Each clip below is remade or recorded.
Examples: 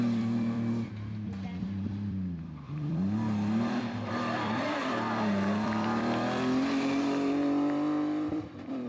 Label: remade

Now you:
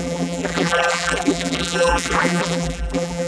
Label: remade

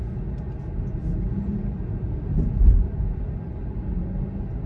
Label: recorded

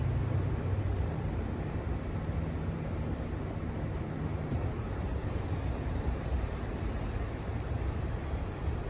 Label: remade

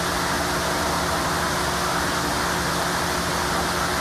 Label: recorded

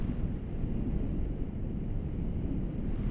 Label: remade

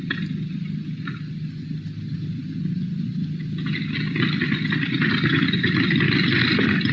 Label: recorded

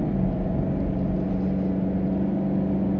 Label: recorded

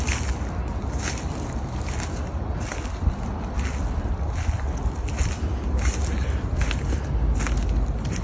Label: recorded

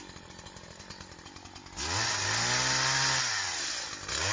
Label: recorded